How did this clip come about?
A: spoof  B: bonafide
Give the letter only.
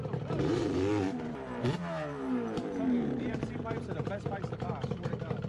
A